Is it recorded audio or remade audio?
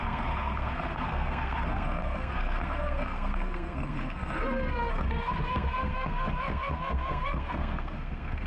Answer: remade